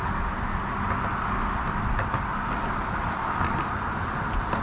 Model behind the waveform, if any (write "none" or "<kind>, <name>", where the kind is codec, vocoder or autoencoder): none